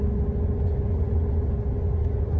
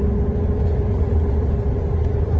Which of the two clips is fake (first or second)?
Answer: second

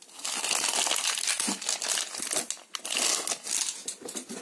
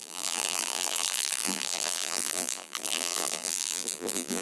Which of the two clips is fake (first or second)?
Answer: second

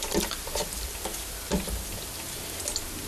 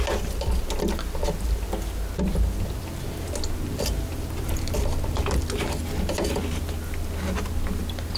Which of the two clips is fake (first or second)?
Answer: first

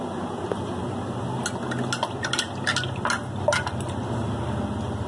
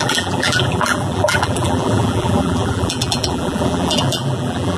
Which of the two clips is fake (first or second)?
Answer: second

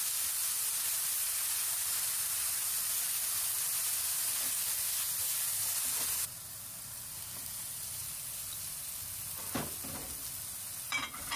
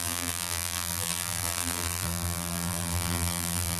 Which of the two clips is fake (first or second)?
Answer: second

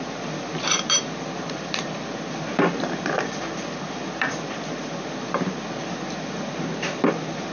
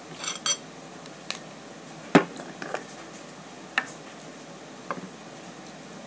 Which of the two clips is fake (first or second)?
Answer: first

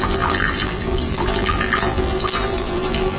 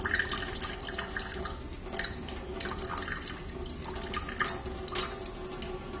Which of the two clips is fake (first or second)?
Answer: first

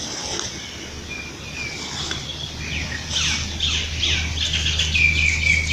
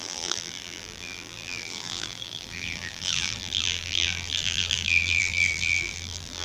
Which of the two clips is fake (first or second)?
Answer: second